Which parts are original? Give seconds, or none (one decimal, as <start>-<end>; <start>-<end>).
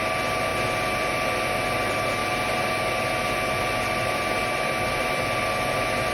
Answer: 0.0-6.1